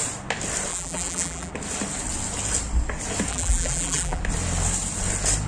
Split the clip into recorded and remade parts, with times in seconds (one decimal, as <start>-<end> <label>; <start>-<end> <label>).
0.0-0.7 recorded; 0.7-1.5 remade; 1.5-3.3 recorded; 3.3-4.2 remade; 4.2-5.5 recorded